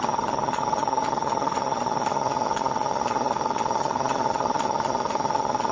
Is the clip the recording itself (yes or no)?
no